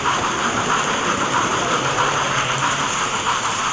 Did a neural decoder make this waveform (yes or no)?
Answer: yes